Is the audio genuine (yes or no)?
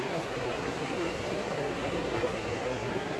no